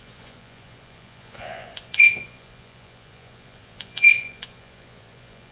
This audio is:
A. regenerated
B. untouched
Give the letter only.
A